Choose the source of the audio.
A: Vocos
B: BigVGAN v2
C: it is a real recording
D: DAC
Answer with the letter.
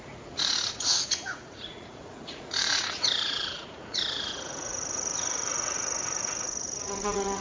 A